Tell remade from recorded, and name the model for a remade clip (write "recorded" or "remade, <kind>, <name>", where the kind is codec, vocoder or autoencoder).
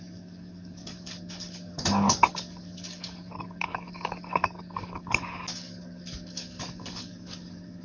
remade, codec, DAC